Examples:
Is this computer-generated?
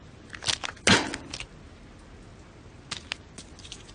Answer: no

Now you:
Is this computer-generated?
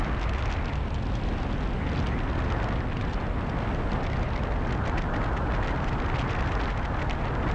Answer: no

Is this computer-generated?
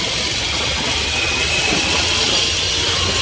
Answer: no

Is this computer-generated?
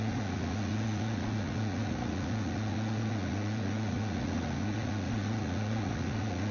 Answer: yes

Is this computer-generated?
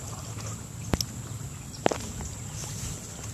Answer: no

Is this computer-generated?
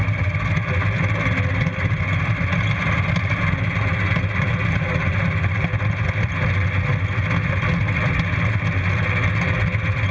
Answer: no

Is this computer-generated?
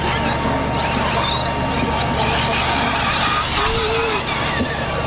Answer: no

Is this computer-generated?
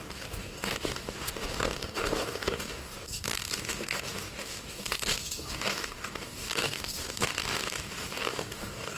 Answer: yes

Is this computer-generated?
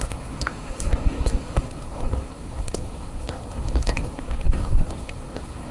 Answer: yes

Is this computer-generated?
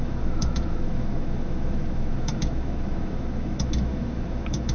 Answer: yes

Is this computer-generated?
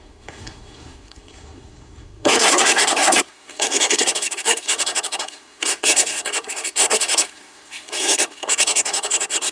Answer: yes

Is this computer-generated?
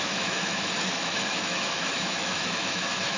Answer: yes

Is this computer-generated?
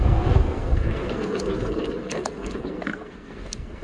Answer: yes